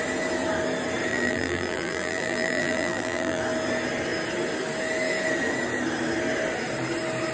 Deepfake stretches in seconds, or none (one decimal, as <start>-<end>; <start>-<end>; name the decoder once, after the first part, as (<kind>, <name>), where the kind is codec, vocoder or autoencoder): 1.1-3.4 (vocoder, BigVGAN v2)